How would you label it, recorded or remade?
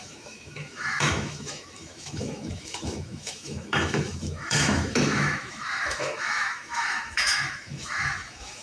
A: remade